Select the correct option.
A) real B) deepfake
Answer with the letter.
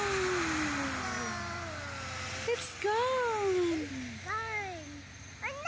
A